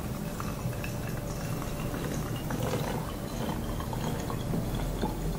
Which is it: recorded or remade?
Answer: recorded